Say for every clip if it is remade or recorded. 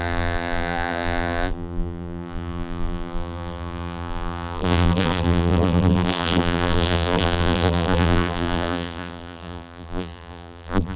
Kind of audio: remade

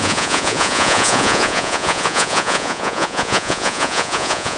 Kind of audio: remade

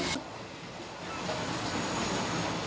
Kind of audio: recorded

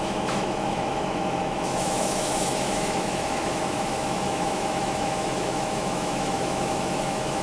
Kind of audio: remade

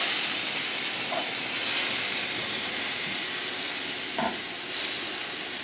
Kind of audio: recorded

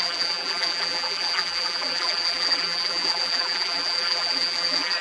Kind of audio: remade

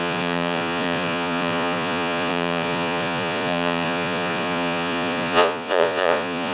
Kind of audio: remade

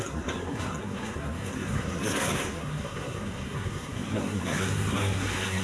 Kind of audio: remade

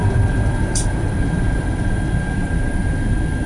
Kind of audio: remade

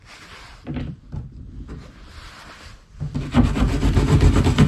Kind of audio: remade